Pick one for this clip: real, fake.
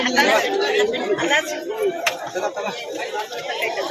fake